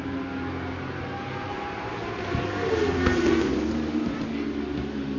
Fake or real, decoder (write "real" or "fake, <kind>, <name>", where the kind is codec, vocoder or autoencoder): real